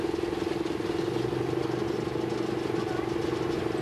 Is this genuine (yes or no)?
yes